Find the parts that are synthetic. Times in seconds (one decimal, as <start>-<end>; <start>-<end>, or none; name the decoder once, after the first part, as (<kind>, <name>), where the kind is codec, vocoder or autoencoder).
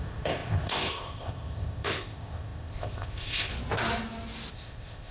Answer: 0.0-3.5 (codec, ZipCodec); 4.5-5.1